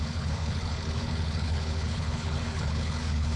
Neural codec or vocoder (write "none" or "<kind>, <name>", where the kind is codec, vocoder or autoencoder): codec, HILCodec